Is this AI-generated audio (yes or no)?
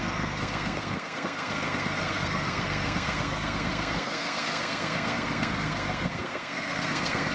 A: yes